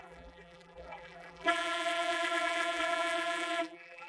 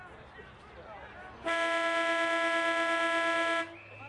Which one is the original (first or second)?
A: second